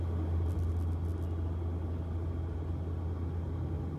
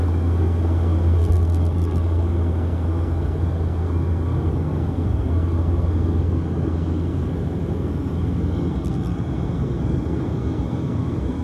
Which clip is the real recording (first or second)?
first